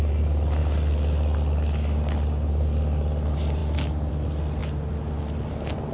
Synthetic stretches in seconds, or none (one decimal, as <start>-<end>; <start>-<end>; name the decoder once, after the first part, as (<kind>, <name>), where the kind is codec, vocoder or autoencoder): none